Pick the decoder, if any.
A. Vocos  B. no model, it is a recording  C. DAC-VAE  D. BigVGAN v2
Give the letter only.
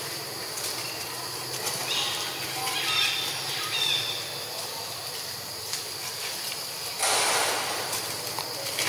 B